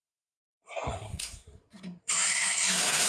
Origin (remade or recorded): remade